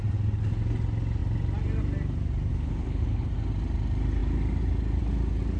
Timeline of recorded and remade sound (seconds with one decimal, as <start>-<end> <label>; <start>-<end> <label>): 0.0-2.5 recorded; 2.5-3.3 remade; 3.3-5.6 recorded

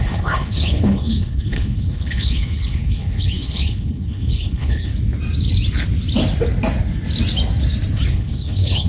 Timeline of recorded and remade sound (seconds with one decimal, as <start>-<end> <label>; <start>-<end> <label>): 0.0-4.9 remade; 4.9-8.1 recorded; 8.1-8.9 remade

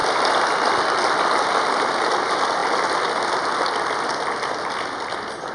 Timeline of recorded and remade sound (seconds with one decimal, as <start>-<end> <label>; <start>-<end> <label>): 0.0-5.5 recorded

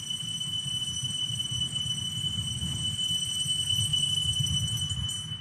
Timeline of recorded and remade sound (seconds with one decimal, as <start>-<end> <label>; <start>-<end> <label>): 0.0-5.4 recorded